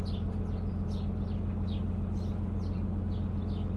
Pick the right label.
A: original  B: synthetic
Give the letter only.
A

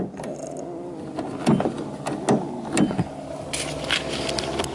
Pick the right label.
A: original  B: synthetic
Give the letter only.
A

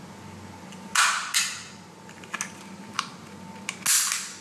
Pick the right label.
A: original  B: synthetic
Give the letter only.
A